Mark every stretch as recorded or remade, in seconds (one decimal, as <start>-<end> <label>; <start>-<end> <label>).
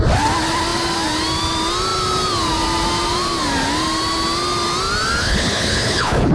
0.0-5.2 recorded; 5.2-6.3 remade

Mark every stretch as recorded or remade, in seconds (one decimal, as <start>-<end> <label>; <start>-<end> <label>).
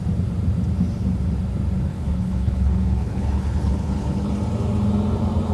0.0-1.9 recorded; 1.9-4.3 remade; 4.3-5.5 recorded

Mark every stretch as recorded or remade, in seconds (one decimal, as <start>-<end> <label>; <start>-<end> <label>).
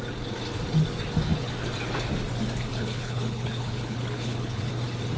0.0-2.7 recorded; 2.7-4.7 remade; 4.7-5.2 recorded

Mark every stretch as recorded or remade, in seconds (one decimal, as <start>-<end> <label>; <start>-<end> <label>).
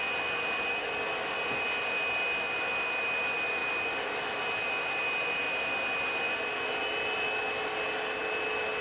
0.0-8.8 recorded